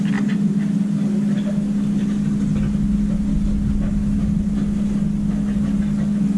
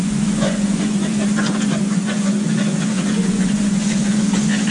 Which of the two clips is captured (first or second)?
first